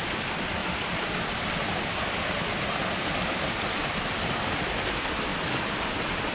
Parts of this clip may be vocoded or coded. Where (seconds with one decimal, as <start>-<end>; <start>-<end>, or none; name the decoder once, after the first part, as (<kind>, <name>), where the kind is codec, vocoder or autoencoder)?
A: 0.6-4.2 (vocoder, BigVGAN v2)